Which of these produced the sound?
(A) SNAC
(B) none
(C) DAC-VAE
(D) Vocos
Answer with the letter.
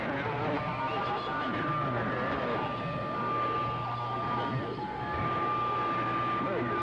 B